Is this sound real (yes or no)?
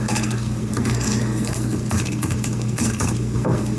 no